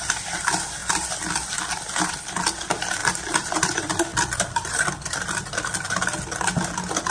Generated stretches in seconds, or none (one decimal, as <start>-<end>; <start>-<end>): 0.8-1.5; 3.0-3.5; 4.1-5.4